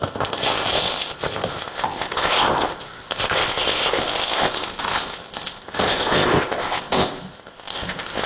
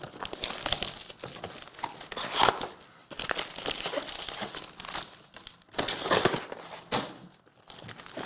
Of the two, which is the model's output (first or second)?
first